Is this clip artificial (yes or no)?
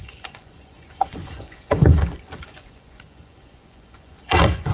yes